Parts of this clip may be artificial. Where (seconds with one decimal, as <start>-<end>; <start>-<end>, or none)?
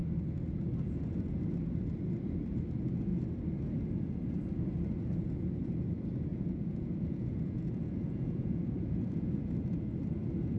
6.3-9.4